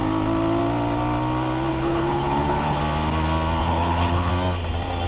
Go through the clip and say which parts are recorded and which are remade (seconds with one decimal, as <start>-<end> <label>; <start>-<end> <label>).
0.0-1.7 recorded; 1.7-2.8 remade; 2.8-3.6 recorded; 3.6-4.3 remade; 4.3-5.1 recorded